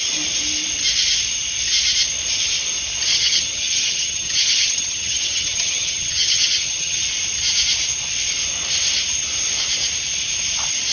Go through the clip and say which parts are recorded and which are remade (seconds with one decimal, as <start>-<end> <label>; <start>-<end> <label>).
0.0-3.1 recorded; 3.1-7.0 remade; 7.0-10.9 recorded